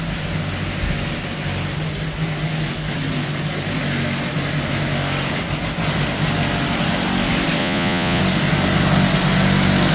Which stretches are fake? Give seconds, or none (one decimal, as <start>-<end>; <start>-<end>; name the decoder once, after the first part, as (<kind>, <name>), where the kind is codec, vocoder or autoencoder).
7.6-8.2 (vocoder, Vocos)